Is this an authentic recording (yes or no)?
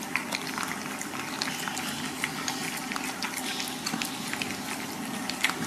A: yes